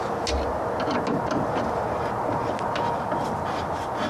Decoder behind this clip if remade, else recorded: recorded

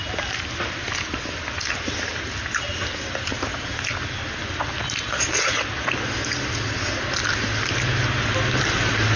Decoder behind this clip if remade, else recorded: recorded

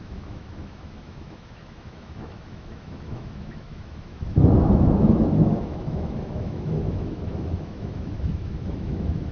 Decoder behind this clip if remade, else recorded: remade, autoencoder, DAC-VAE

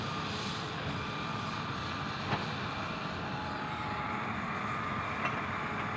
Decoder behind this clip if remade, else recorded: remade, vocoder, BigVGAN v2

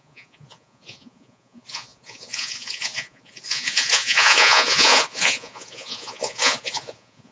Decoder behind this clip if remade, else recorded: remade, vocoder, Vocos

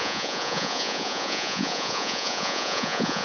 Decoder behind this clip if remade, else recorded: remade, vocoder, Vocos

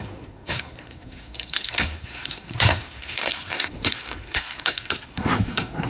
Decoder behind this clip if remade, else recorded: remade, codec, SNAC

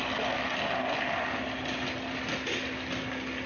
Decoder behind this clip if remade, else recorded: recorded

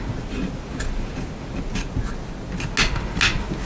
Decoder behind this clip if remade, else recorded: recorded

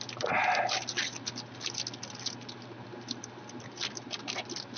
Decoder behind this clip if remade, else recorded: recorded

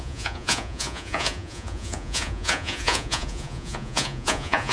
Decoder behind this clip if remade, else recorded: remade, vocoder, Vocos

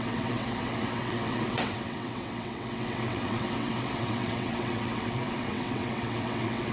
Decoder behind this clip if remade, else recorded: remade, vocoder, WaveNeXt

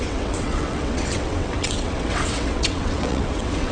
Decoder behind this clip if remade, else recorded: remade, vocoder, WaveNeXt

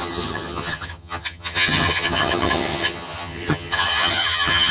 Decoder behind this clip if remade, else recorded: remade, vocoder, HiFi-GAN